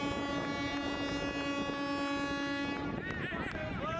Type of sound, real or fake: real